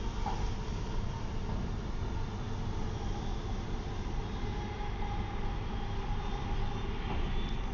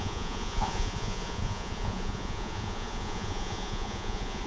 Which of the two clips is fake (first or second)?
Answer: second